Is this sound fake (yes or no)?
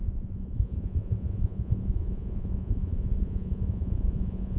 yes